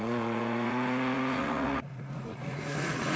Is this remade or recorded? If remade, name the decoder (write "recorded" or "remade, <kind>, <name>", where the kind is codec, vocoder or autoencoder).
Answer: remade, vocoder, Vocos